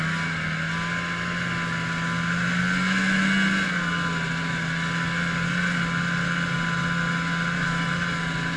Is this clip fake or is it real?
real